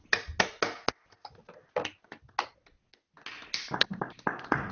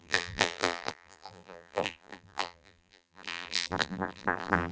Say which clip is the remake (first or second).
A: second